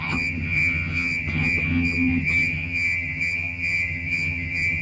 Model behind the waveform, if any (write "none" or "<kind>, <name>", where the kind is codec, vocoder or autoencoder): vocoder, HiFi-GAN